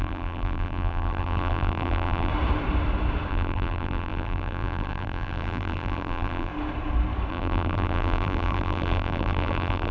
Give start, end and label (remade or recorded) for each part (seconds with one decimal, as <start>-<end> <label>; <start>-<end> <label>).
0.0-2.3 remade; 2.3-3.3 recorded; 3.3-6.5 remade; 6.5-7.3 recorded; 7.3-9.9 remade

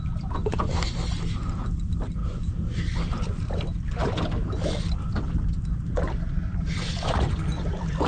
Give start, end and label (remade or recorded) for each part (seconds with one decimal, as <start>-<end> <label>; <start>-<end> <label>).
0.0-2.2 remade; 2.2-3.2 recorded; 3.2-4.0 remade; 4.0-6.4 recorded; 6.4-8.1 remade

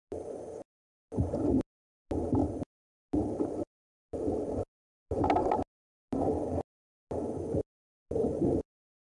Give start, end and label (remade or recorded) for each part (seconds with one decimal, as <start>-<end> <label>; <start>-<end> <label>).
0.0-9.0 recorded

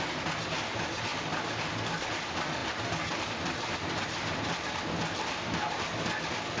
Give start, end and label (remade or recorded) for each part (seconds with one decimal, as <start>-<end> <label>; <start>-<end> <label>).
0.0-2.6 recorded; 2.6-6.6 remade

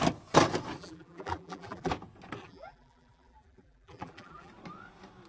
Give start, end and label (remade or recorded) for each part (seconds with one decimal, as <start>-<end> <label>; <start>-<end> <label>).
0.0-0.8 recorded; 0.8-1.9 remade; 1.9-2.4 recorded; 2.4-4.5 remade; 4.5-5.3 recorded

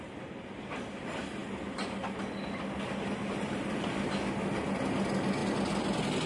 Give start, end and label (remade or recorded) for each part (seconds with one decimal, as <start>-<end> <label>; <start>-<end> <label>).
0.0-3.2 recorded; 3.2-4.1 remade; 4.1-6.3 recorded

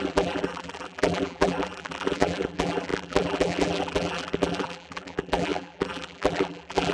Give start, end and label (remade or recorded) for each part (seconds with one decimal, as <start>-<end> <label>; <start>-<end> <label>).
0.0-6.9 remade

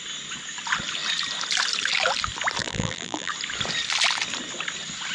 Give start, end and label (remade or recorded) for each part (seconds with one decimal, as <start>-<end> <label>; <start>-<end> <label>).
0.0-2.6 recorded; 2.6-3.3 remade; 3.3-5.1 recorded